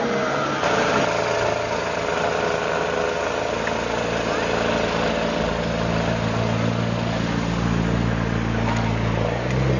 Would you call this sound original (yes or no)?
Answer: yes